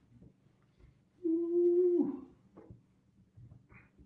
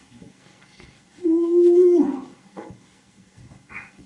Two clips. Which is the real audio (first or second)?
first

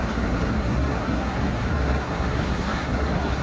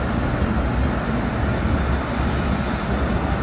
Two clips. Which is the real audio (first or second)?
second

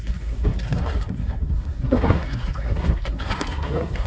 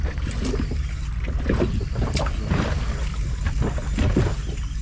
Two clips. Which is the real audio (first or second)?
second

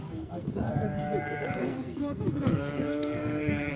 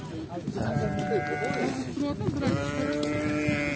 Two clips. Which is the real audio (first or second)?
second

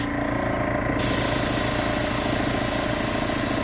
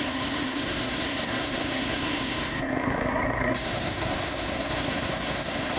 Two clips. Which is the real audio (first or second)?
first